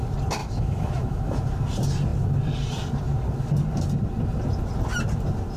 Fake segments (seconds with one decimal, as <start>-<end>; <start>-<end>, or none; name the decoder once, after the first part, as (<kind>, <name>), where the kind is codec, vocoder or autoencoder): 0.4-1.4 (autoencoder, DAC-VAE)